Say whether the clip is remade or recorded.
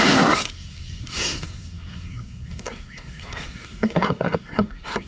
remade